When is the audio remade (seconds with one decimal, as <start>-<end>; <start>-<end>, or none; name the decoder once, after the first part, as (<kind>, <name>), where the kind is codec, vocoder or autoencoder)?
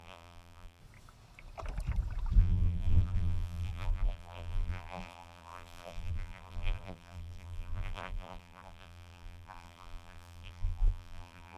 0.0-0.8 (vocoder, BigVGAN v2); 2.4-11.6